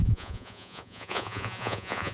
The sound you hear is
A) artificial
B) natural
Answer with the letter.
A